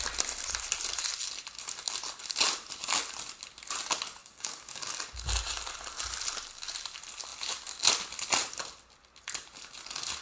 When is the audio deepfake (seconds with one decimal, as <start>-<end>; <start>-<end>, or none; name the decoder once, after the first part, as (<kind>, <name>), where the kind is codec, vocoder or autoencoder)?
4.2-4.9 (codec, DAC)